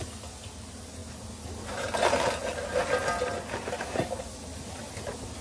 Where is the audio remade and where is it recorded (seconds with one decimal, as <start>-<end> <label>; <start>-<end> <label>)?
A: 0.0-5.4 recorded